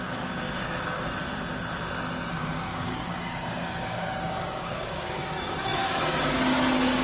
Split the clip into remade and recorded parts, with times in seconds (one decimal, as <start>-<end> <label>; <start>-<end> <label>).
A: 0.0-1.2 remade; 1.2-2.3 recorded; 2.3-7.0 remade